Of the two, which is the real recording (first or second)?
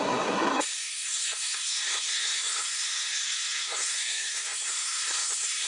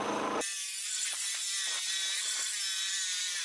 second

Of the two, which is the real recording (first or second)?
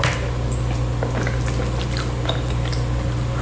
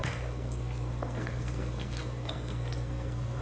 first